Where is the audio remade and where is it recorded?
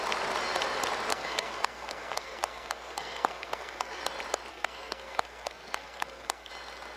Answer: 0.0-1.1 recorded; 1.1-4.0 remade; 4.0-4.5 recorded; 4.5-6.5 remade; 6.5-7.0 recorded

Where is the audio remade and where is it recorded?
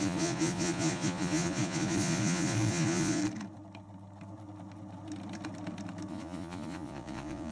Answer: 0.0-3.2 remade; 3.2-6.1 recorded; 6.1-7.5 remade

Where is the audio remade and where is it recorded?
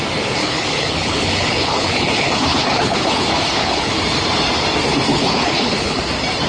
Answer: 0.0-0.4 recorded; 0.4-3.9 remade; 3.9-5.1 recorded; 5.1-6.0 remade; 6.0-6.5 recorded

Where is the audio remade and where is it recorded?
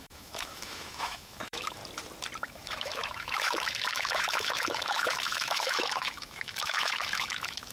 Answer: 0.0-1.8 remade; 1.8-2.4 recorded; 2.4-7.7 remade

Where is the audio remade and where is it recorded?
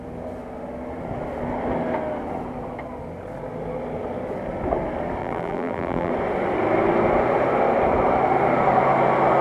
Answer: 0.0-5.2 recorded; 5.2-6.1 remade; 6.1-9.4 recorded